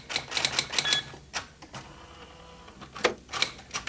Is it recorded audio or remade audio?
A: recorded